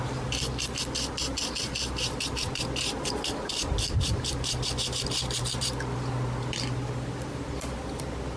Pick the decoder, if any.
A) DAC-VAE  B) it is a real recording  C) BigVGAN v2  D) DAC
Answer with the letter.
C